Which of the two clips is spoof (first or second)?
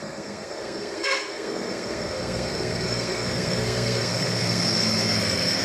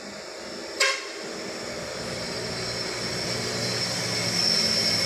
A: first